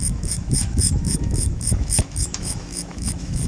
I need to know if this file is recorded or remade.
remade